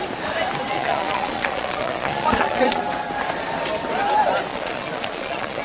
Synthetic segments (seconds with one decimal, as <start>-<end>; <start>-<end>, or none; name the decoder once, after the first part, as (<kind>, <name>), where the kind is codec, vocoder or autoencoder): 0.7-2.8 (vocoder, Vocos); 4.5-5.6